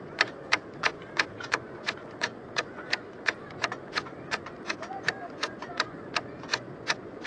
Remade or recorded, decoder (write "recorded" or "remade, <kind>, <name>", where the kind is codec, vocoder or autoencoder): remade, vocoder, Vocos